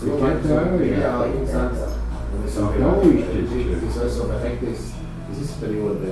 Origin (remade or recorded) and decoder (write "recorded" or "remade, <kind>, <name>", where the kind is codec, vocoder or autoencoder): recorded